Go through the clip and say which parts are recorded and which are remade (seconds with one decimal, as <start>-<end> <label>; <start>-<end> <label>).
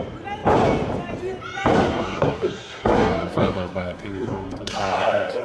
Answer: 0.0-1.9 recorded; 1.9-5.4 remade